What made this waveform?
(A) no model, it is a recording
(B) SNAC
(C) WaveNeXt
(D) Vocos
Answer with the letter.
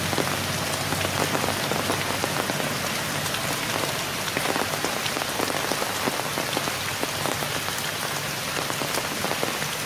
A